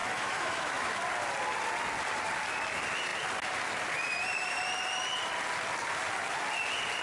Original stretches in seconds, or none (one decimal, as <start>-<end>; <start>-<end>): 1.0-7.0

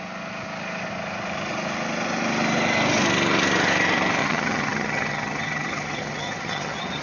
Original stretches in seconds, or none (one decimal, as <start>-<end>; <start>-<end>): 0.0-4.2

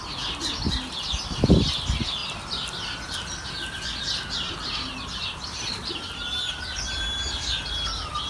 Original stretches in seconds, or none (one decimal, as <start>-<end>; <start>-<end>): 0.0-8.3

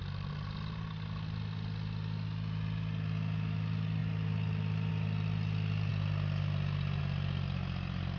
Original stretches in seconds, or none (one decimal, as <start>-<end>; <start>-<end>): 0.0-8.2

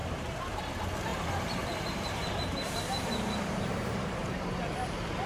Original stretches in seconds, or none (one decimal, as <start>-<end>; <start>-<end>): 0.6-1.1; 4.3-5.3

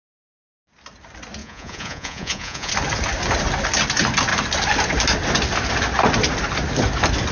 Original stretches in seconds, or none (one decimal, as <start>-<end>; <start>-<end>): 0.0-1.4; 2.7-7.3

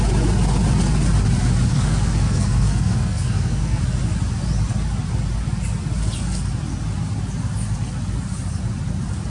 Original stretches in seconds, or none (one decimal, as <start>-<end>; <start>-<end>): 0.0-1.7; 3.8-9.3

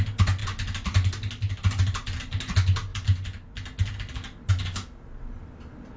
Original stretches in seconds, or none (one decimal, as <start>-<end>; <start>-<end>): 0.0-6.0